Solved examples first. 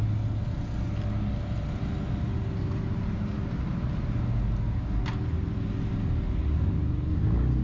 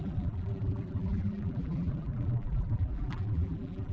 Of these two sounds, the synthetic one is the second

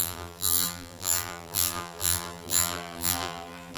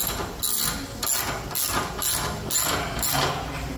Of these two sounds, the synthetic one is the first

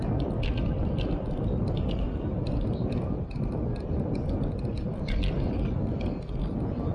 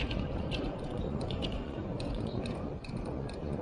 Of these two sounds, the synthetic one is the second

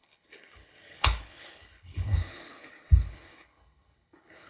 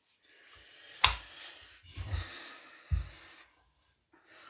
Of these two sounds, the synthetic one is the first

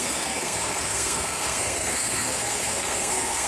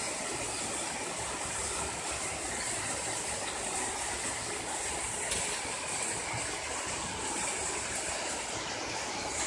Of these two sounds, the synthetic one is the first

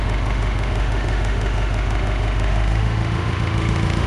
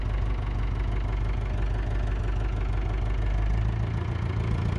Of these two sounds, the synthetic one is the first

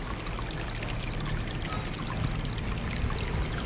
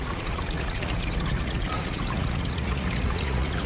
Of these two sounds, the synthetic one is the second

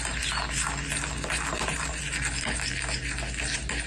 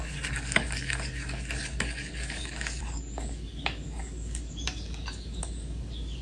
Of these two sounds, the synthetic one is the second